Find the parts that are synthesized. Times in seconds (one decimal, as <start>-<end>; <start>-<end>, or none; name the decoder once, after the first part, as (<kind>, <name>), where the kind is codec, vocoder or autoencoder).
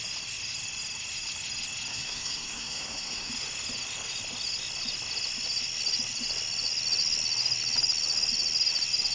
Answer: 1.9-3.3 (codec, SNAC)